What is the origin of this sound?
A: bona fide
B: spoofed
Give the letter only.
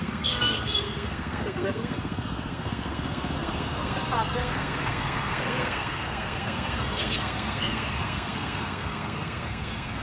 B